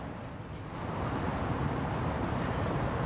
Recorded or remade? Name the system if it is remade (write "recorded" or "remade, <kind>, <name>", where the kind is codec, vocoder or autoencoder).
recorded